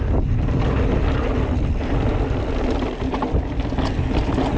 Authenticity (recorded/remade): recorded